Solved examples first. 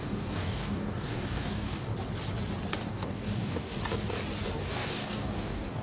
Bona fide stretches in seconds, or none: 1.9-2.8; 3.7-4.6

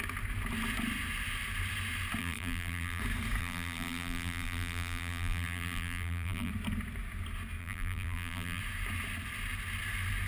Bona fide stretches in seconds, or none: 0.0-2.2; 3.0-3.4; 6.5-7.6; 8.6-10.3

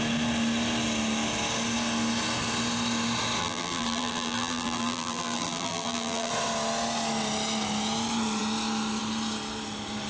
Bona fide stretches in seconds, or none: 0.0-3.4; 6.3-10.1

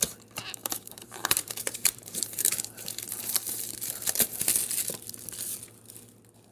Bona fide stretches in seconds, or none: 0.0-0.6; 4.5-6.5

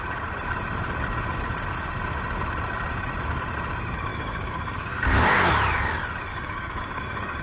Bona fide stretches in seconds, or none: 0.0-4.1; 5.5-6.3

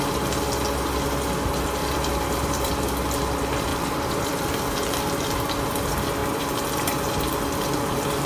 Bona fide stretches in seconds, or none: 0.0-1.8; 2.7-3.7; 4.6-8.3

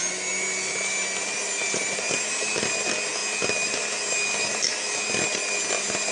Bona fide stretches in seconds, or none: 0.0-6.1

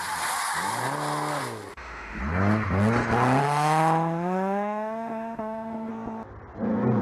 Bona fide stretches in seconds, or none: 0.0-1.7; 2.2-3.4; 5.9-7.0